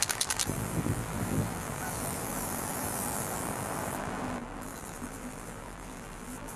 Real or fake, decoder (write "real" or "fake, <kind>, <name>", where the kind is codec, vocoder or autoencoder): fake, vocoder, BigVGAN v2